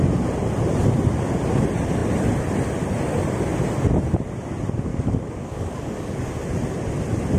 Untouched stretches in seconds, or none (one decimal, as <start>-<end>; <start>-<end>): 0.0-4.9; 6.2-7.4